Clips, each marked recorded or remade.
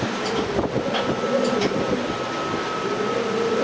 recorded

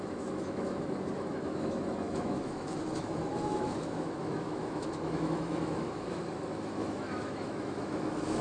remade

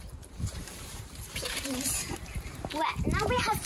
remade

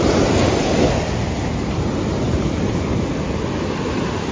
recorded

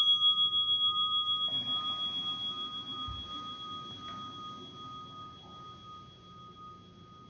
recorded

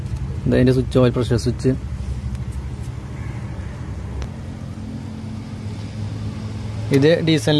recorded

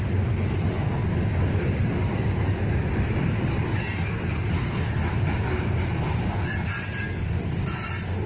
recorded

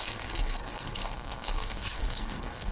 remade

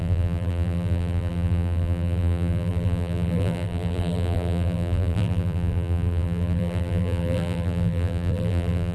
remade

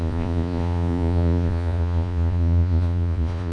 remade